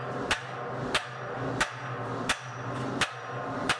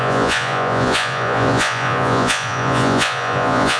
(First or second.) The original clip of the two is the first